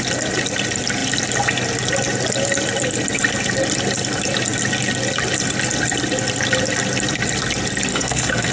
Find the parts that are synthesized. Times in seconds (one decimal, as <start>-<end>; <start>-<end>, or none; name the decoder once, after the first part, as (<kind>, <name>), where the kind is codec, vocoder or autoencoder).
7.9-8.5 (codec, SNAC)